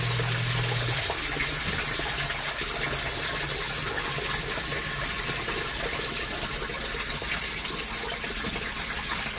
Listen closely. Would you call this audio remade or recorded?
recorded